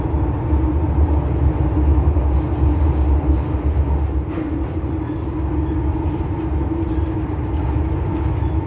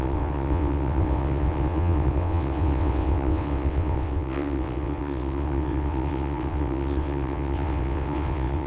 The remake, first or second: second